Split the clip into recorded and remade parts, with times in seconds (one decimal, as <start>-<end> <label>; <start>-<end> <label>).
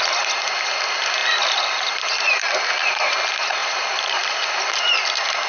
0.0-3.6 recorded; 3.6-4.8 remade; 4.8-5.5 recorded